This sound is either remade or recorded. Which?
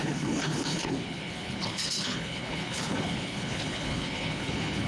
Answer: remade